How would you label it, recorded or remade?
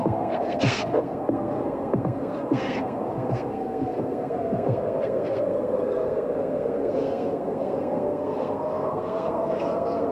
remade